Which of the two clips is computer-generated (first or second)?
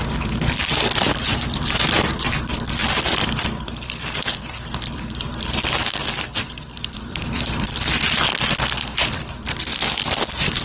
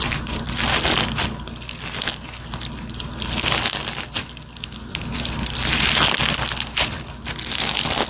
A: first